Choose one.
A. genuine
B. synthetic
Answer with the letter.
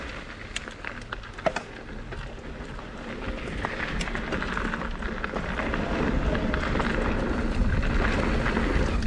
A